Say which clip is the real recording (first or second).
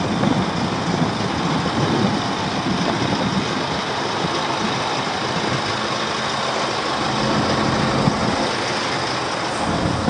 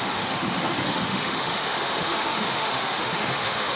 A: first